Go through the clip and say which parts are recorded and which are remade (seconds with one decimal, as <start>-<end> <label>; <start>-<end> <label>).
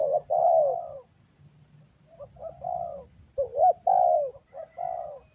0.0-5.3 recorded